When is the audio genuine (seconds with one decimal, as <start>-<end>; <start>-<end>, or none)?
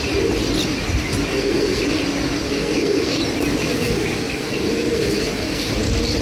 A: 0.0-1.3; 2.0-2.4; 3.2-3.6; 5.7-6.2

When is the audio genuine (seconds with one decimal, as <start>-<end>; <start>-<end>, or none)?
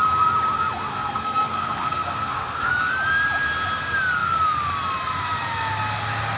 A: 0.0-0.9; 2.9-6.4